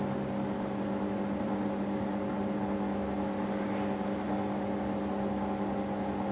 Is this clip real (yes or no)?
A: yes